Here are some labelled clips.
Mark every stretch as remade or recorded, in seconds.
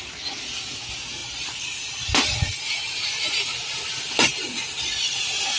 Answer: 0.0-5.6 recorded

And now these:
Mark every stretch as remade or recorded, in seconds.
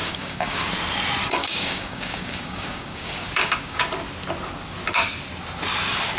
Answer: 0.0-0.7 remade; 0.7-1.2 recorded; 1.2-3.8 remade; 3.8-6.2 recorded